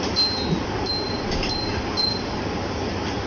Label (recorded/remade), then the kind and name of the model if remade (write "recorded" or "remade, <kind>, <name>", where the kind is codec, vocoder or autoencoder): remade, vocoder, BigVGAN v2